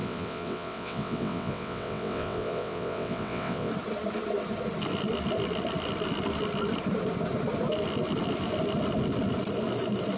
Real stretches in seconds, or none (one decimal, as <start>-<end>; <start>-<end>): 3.7-10.2